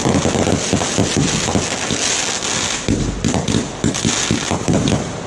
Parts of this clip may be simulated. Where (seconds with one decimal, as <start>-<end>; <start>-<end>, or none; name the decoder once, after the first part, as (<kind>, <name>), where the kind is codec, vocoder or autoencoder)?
none